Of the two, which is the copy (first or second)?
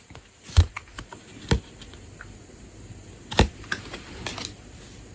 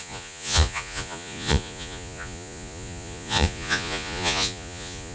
second